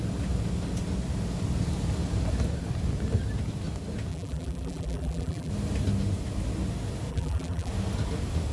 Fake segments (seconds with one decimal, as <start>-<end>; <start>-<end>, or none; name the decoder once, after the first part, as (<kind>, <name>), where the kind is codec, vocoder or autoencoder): 4.1-5.5 (vocoder, BigVGAN v2); 7.1-7.7